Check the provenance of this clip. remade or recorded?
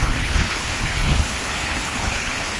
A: remade